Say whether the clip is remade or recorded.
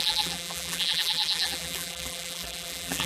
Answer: remade